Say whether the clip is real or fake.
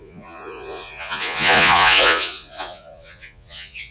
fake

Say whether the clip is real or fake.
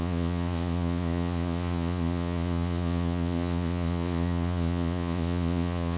fake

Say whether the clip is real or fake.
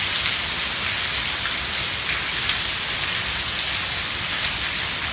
real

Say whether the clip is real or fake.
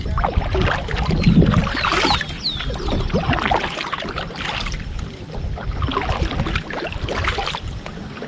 real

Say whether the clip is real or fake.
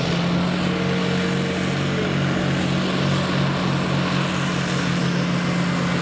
real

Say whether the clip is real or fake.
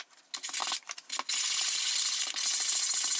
real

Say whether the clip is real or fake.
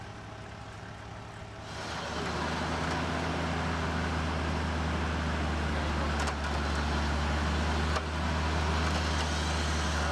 real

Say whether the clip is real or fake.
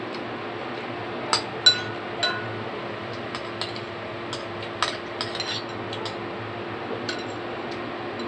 real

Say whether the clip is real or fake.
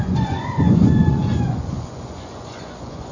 fake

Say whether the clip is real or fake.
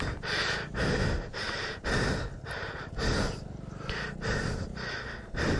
real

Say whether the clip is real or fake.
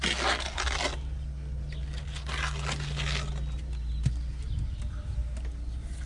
real